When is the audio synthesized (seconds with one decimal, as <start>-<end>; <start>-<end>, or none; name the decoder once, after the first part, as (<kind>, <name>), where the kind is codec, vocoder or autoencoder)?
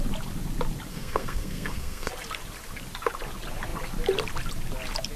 0.9-2.1 (codec, SNAC)